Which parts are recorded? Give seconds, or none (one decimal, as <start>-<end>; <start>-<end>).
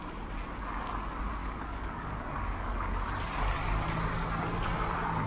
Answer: 0.0-1.4; 3.1-5.3